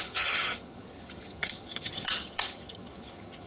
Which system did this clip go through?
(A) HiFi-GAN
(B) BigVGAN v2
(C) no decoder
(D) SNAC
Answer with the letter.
A